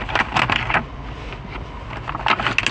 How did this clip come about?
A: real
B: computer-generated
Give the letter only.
A